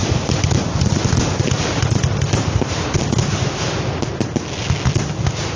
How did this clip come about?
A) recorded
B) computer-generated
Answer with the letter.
A